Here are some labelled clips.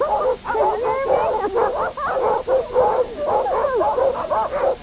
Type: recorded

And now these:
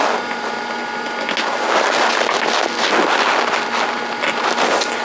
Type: recorded